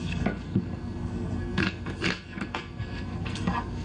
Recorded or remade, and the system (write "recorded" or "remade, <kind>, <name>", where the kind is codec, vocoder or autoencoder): remade, codec, SNAC